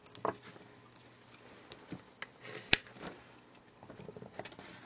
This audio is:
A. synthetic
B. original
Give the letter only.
B